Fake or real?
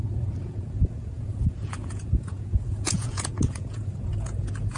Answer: fake